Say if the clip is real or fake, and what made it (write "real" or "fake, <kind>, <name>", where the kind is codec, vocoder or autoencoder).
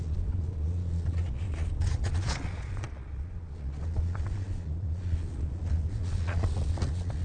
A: fake, vocoder, Vocos